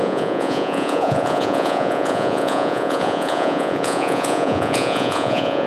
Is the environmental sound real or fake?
fake